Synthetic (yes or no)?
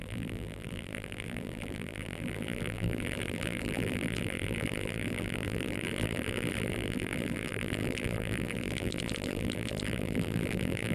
yes